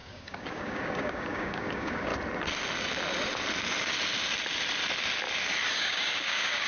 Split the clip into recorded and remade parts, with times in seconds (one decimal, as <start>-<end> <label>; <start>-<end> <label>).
0.0-2.1 remade; 2.1-5.7 recorded; 5.7-6.7 remade